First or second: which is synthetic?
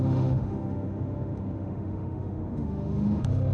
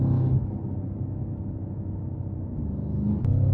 first